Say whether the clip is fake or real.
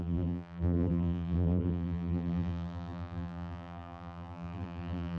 fake